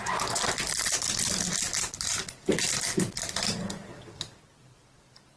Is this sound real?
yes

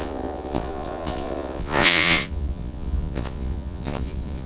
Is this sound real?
no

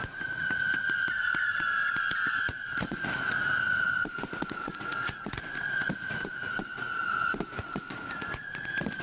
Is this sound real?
no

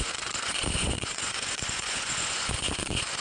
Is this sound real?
no